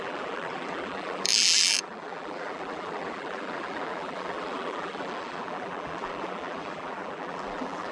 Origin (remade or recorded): remade